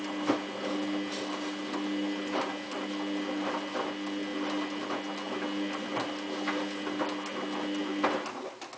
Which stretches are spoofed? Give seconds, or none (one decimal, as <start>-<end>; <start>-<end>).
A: none